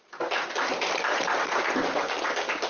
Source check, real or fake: real